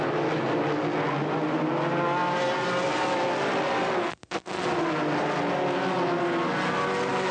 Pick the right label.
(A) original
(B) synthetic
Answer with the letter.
A